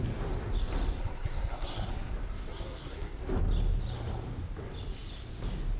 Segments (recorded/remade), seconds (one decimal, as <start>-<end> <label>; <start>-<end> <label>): 0.0-1.0 recorded; 1.0-1.9 remade; 1.9-2.5 recorded; 2.5-3.2 remade; 3.2-5.8 recorded